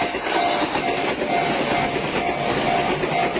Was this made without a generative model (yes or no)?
yes